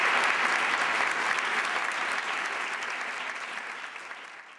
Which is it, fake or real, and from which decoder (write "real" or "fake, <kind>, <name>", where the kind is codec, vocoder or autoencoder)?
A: real